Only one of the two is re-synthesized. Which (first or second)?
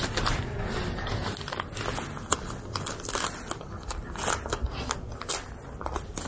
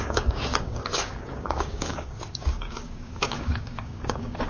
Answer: second